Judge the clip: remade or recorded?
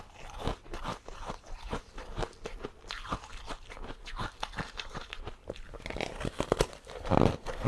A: recorded